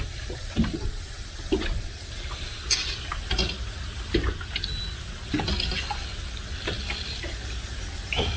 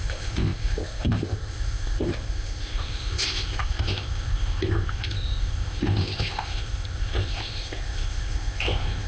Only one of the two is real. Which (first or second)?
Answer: first